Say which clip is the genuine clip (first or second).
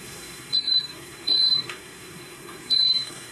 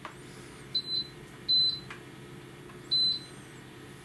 second